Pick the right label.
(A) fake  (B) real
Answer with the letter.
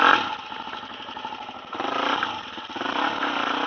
B